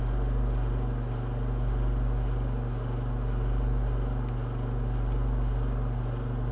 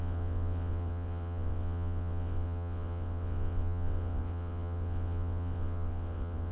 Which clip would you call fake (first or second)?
second